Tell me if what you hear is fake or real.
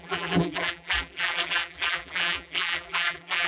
fake